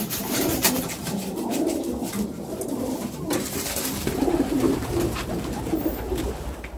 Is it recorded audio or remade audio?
remade